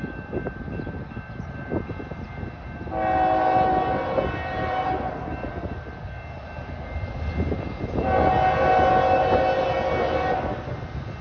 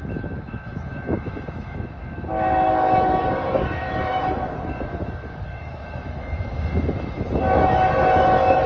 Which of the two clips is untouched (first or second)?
first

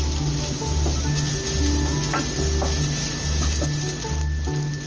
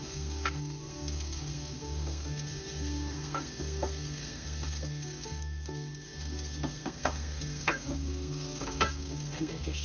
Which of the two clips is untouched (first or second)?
first